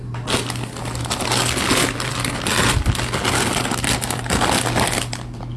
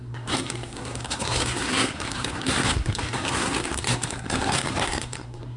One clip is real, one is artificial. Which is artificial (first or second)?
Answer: second